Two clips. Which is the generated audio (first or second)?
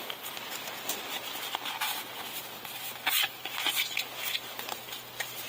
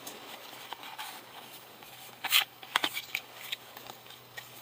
second